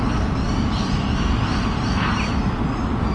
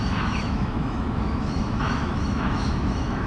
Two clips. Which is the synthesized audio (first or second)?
second